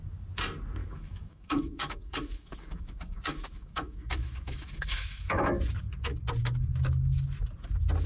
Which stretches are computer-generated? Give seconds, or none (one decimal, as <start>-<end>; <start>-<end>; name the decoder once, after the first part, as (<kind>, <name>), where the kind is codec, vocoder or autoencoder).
0.8-5.6 (autoencoder, DAC-VAE)